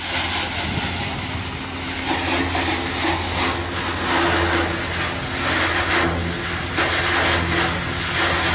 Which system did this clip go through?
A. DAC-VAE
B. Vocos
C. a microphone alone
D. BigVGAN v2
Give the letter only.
C